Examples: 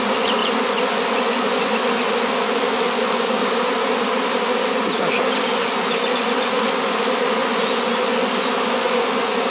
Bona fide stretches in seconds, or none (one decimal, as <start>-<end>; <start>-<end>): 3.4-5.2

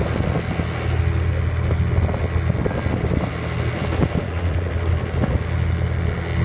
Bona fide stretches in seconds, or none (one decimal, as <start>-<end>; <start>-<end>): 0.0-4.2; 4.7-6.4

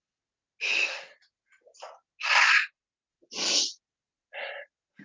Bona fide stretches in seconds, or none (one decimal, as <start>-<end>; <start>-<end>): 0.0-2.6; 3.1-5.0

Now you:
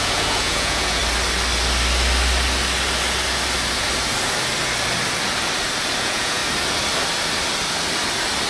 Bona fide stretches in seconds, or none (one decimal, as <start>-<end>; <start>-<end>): 1.0-6.0; 6.4-8.5

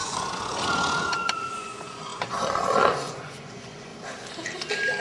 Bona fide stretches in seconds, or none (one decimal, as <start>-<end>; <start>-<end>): 3.9-5.0